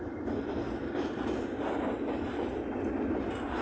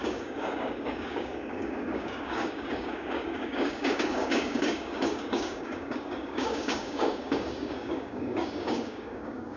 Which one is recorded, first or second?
first